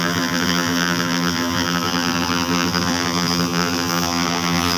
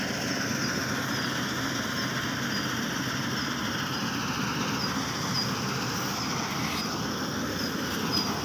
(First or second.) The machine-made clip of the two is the first